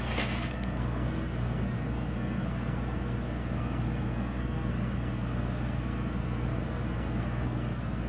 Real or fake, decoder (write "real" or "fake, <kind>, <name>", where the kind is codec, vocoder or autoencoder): fake, codec, SNAC